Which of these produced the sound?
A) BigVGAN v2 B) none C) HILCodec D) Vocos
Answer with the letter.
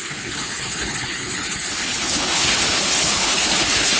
C